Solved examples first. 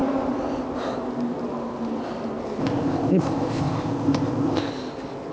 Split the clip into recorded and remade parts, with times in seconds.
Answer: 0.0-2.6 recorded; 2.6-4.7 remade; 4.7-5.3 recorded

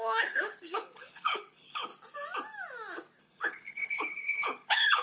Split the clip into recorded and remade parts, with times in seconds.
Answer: 0.0-1.9 remade; 1.9-3.2 recorded; 3.2-5.0 remade

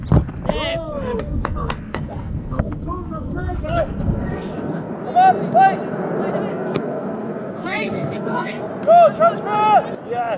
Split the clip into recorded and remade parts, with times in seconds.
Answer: 0.0-0.7 recorded; 0.7-4.9 remade; 4.9-6.5 recorded; 6.5-8.6 remade; 8.6-10.4 recorded

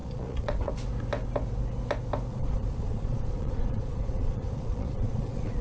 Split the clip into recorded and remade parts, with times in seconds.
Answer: 0.0-0.7 remade; 0.7-2.3 recorded; 2.3-5.6 remade

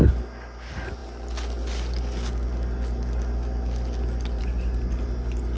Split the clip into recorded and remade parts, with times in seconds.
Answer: 0.0-5.6 recorded

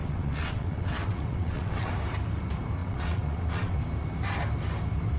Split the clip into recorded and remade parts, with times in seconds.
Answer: 0.0-1.9 remade; 1.9-2.8 recorded; 2.8-3.8 remade; 3.8-5.2 recorded